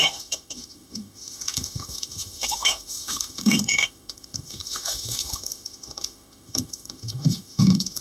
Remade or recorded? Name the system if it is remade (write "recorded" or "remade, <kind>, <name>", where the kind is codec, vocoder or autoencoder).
remade, autoencoder, DAC-VAE